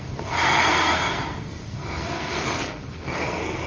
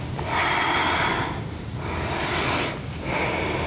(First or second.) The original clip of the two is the second